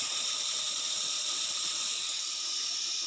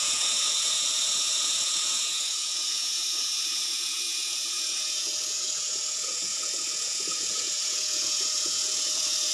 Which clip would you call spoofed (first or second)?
second